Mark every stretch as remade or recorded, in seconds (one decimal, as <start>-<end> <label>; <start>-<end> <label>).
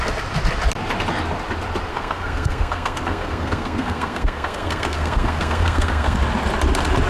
0.0-1.9 recorded; 1.9-6.2 remade; 6.2-7.1 recorded